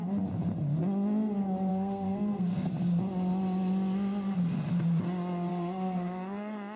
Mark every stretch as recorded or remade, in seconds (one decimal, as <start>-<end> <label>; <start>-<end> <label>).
0.0-1.7 recorded; 1.7-2.7 remade; 2.7-5.5 recorded; 5.5-6.8 remade